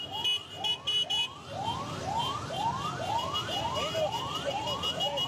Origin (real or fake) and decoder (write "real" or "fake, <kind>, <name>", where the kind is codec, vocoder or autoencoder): real